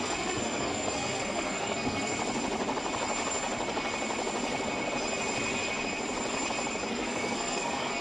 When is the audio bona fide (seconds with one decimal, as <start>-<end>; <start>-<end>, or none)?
2.1-6.9